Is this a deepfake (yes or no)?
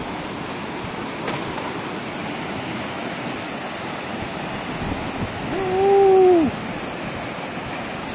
no